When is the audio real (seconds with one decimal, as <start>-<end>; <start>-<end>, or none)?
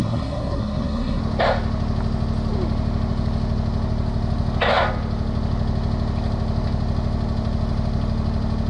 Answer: 1.2-8.7